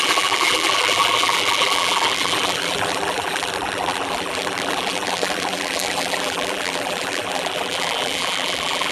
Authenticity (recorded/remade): remade